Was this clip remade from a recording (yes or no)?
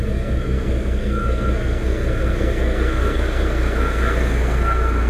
yes